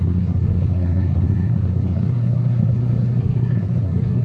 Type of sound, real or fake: fake